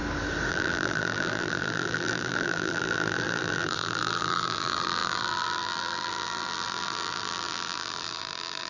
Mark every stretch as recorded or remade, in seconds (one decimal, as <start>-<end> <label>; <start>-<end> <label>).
0.0-0.5 recorded; 0.5-8.7 remade